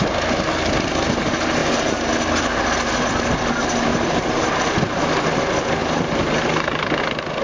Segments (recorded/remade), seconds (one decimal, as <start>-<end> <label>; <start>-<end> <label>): 0.0-1.6 recorded; 1.6-2.1 remade; 2.1-3.9 recorded; 3.9-5.0 remade; 5.0-5.8 recorded; 5.8-7.0 remade; 7.0-7.4 recorded